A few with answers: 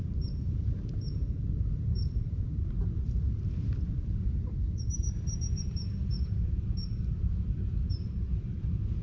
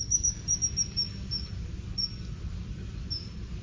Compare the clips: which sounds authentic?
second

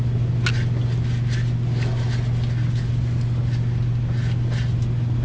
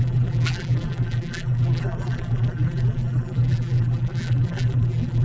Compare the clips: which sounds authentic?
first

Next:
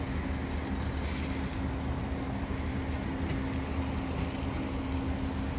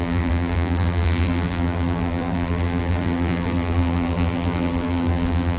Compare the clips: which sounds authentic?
first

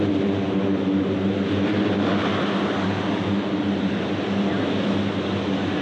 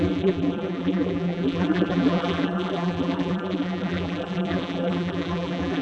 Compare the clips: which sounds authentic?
first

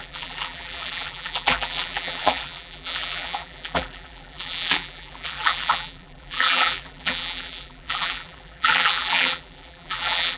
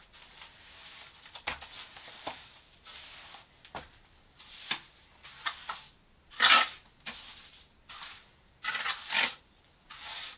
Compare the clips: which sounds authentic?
second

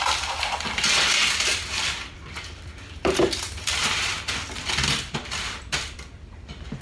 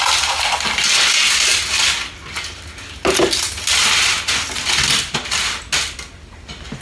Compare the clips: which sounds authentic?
second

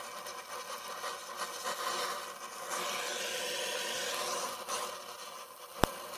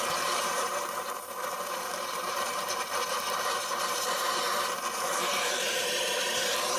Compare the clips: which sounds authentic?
first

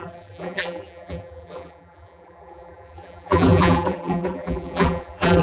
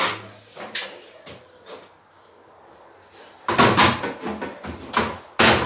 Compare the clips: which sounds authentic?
second